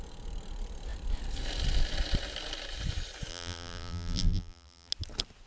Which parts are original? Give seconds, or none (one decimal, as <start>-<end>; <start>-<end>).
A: 0.0-3.3; 4.9-5.5